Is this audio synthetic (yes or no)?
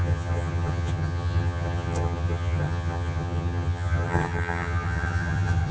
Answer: yes